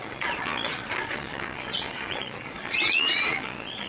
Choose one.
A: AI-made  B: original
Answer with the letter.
A